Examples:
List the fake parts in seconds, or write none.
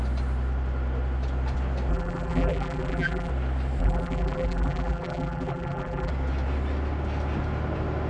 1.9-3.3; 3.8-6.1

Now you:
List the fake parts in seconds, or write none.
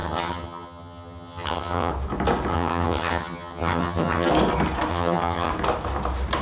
0.0-1.9; 2.5-4.3; 4.9-5.5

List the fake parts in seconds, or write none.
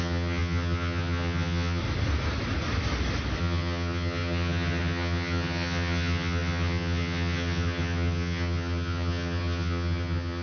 0.0-1.8; 3.4-10.4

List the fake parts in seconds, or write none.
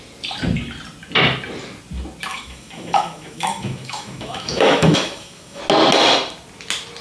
2.3-5.6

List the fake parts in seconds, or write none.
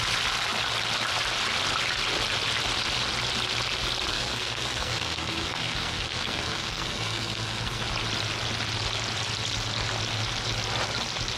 4.1-7.8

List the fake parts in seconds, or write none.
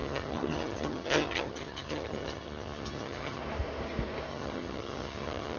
0.0-3.4; 4.3-5.6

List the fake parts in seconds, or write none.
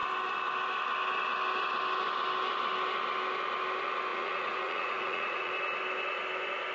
4.1-5.5